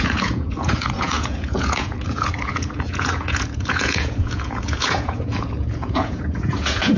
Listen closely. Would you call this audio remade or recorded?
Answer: remade